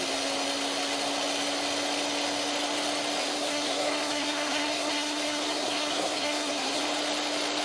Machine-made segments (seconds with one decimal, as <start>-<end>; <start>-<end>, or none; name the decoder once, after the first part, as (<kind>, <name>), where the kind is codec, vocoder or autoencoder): 3.2-6.8 (codec, SNAC)